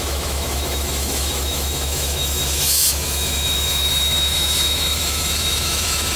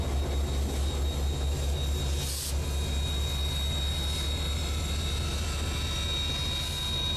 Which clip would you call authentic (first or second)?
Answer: second